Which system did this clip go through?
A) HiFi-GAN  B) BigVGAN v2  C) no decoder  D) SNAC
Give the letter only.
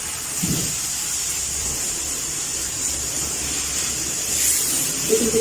B